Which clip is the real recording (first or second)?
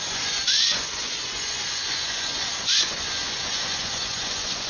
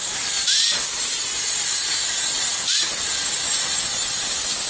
second